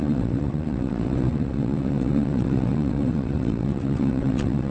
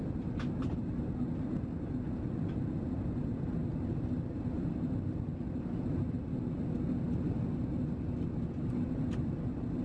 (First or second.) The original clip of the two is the second